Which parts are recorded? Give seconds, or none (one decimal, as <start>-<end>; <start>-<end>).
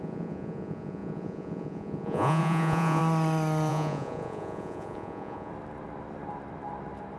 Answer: 3.0-3.7; 5.5-7.2